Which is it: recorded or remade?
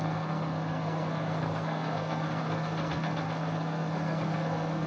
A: remade